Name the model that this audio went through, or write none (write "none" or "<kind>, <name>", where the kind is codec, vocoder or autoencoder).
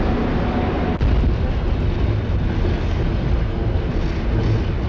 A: none